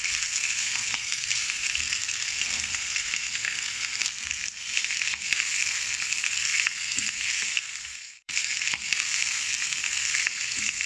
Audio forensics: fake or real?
fake